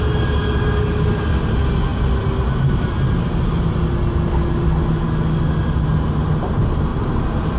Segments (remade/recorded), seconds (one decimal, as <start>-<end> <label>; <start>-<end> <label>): 0.0-6.9 recorded; 6.9-7.6 remade